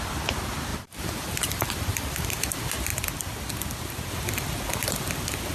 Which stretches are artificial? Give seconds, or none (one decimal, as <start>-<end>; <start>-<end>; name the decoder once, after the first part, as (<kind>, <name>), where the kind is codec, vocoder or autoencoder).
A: 0.7-2.3 (vocoder, BigVGAN v2)